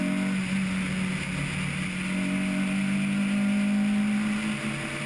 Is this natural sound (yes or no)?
yes